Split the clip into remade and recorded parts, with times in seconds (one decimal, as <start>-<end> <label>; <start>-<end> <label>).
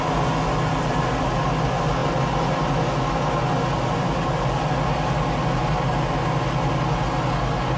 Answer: 0.0-7.8 recorded